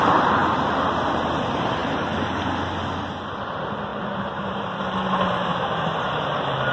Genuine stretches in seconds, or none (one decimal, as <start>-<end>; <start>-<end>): 0.0-3.9; 4.7-6.7